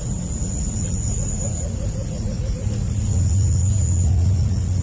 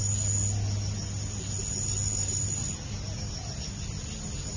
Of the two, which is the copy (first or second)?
first